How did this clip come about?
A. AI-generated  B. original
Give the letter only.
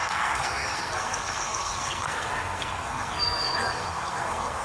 A